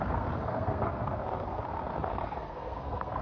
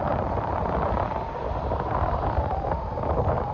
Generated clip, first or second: first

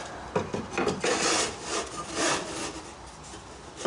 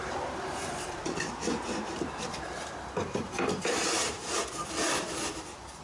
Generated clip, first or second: second